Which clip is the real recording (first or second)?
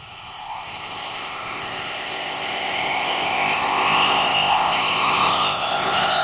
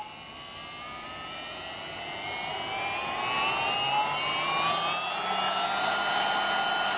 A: second